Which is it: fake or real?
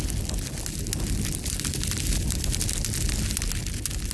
real